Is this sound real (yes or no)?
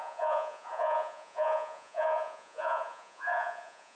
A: no